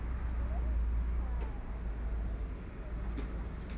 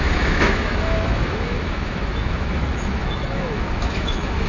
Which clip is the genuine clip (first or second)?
first